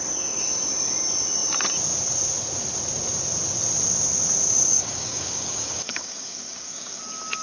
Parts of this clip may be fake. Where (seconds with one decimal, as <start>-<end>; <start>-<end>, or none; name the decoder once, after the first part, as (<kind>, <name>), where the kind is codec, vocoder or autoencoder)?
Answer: 4.7-7.0 (codec, DAC)